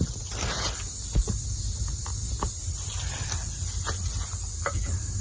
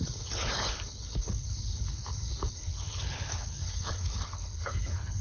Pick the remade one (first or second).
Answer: second